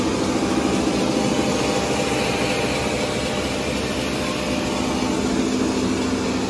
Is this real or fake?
real